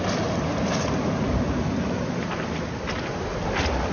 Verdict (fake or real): real